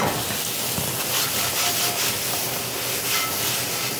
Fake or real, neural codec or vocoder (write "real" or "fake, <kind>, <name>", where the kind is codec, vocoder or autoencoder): real